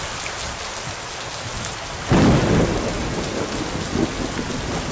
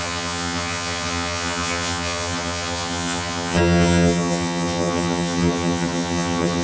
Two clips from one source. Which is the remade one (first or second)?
second